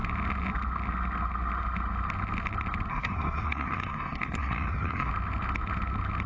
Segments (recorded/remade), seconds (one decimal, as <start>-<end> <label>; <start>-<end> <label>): 0.0-2.9 recorded; 2.9-5.1 remade; 5.1-6.3 recorded